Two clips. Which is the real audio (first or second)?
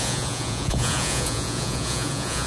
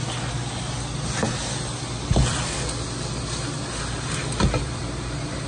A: second